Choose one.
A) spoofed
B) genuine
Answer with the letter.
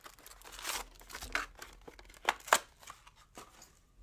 B